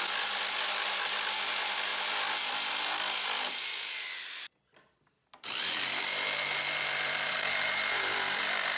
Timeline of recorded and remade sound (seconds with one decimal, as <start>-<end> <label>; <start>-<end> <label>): 0.0-1.9 remade; 1.9-2.7 recorded; 2.7-8.8 remade